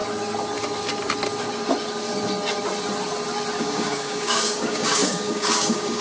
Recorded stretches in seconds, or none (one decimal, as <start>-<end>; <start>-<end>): 0.0-3.6

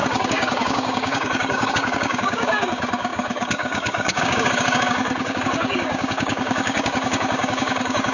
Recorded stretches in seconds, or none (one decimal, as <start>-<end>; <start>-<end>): none

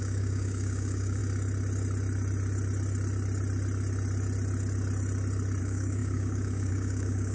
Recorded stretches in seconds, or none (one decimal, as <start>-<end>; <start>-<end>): 1.2-5.6

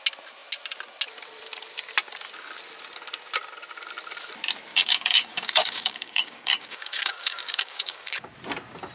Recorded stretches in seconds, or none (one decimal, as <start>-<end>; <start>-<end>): 0.0-4.7; 8.1-8.9

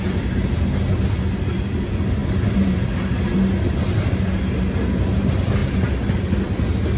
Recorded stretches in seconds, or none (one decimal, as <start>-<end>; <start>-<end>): 0.0-7.0

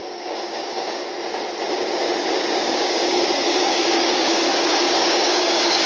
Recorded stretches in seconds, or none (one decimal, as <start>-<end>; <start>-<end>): 1.0-2.5

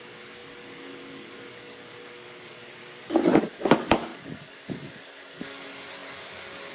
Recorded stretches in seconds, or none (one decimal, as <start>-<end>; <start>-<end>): 2.8-3.4